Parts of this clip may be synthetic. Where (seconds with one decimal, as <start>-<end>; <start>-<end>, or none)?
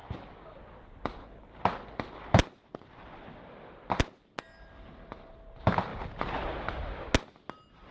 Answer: none